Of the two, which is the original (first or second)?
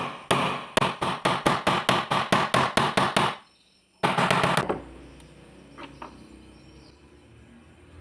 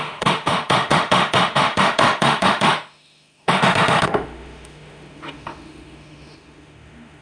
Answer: first